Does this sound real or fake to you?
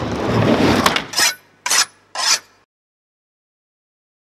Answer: real